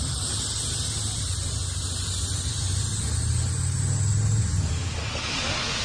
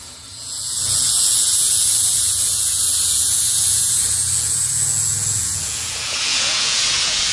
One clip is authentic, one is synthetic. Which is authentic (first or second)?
first